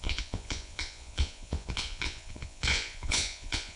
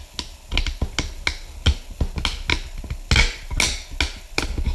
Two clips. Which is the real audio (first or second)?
second